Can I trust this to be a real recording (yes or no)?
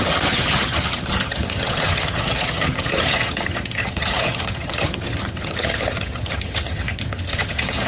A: no